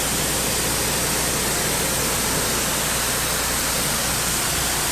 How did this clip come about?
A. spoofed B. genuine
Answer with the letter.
B